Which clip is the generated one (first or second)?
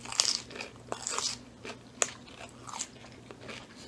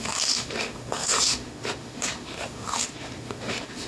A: second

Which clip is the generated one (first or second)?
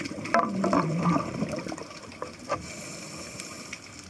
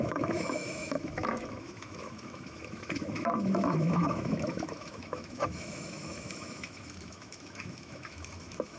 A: second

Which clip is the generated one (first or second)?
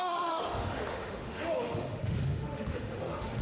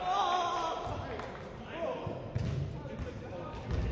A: first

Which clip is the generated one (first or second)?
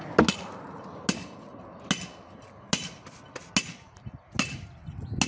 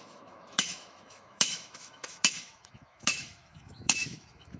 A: second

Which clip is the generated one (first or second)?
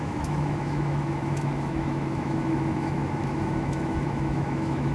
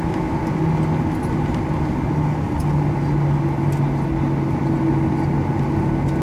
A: first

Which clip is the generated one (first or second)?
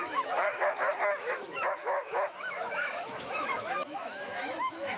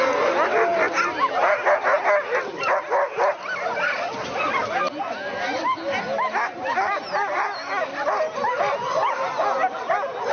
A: first